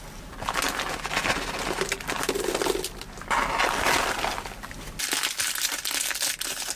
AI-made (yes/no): no